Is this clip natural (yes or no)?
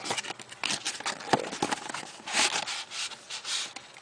yes